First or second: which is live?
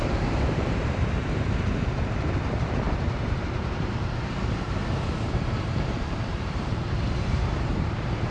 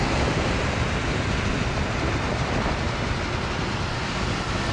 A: second